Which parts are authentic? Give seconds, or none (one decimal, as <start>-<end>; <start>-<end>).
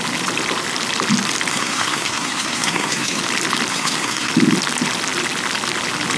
0.0-1.5; 3.2-3.7; 4.3-6.2